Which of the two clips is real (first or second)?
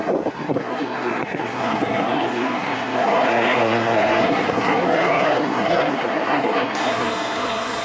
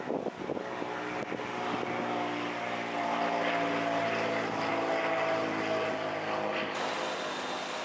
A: second